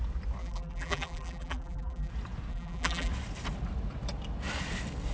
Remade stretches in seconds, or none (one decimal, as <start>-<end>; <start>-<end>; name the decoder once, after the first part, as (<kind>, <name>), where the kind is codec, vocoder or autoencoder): 0.4-2.1 (vocoder, BigVGAN v2); 2.5-3.1